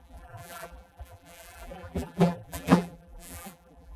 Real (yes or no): no